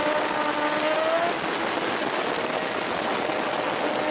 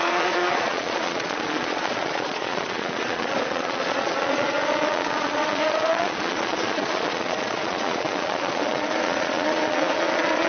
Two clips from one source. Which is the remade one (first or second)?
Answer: second